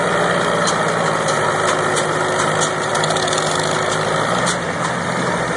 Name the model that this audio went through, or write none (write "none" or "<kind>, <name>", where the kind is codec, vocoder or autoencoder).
none